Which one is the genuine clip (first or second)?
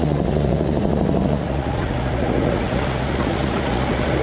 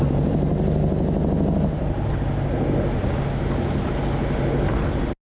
second